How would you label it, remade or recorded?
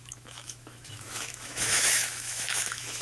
remade